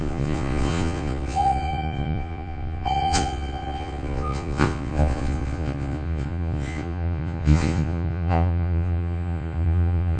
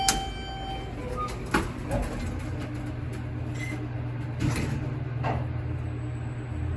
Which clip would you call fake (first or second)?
first